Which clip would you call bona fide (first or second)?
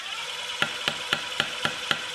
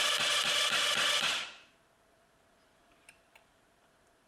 first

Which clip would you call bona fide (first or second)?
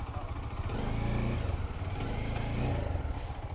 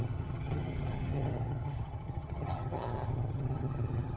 first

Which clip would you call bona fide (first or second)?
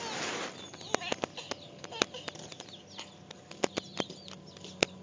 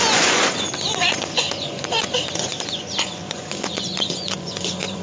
first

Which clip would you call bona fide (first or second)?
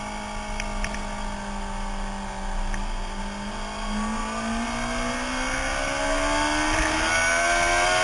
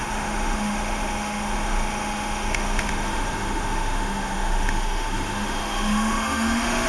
first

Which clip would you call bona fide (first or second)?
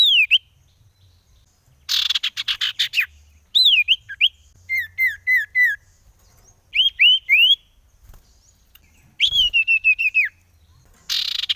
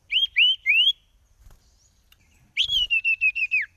first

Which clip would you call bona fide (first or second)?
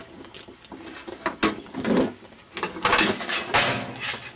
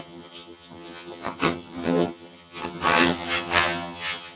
first